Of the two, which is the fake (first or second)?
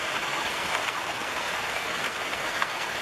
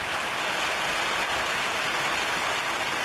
first